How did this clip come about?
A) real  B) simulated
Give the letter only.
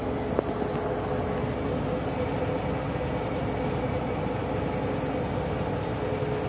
A